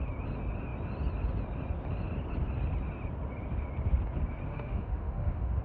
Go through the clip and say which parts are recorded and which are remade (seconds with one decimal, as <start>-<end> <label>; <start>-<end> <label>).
0.0-4.5 recorded; 4.5-5.6 remade